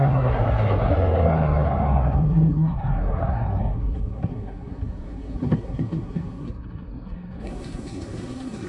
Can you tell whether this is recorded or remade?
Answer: remade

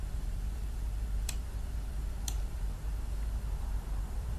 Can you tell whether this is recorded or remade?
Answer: remade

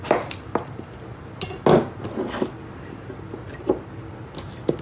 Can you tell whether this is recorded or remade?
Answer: recorded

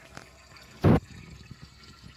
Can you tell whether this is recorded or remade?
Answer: recorded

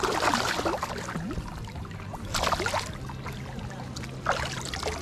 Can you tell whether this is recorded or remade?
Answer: recorded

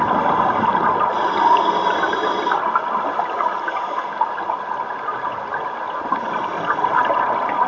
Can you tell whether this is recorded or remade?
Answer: recorded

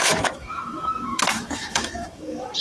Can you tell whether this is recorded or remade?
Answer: remade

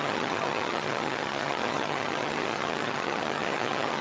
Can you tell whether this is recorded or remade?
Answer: remade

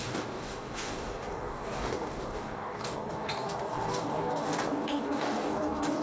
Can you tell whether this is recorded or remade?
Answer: remade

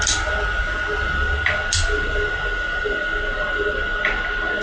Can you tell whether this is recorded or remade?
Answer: recorded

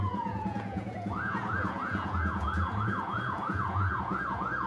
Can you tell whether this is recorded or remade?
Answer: remade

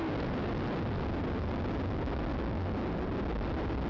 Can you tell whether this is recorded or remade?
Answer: recorded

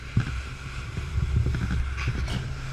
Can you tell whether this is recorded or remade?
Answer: recorded